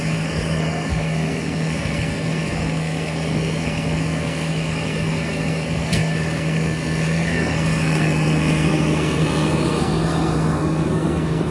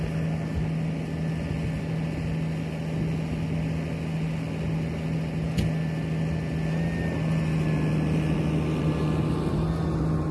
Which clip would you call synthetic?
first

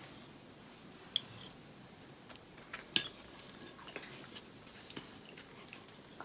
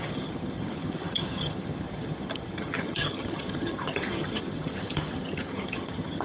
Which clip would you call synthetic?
second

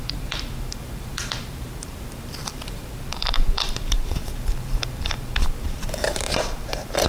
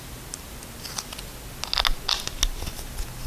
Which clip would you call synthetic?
first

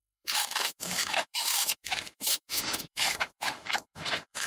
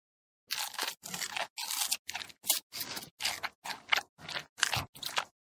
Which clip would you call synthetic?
first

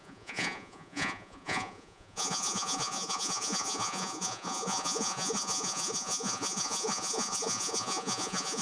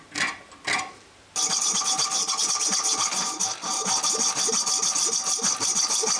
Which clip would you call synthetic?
first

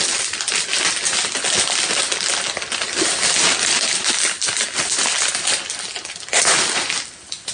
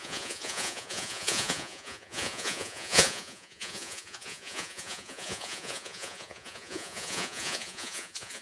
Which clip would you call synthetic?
second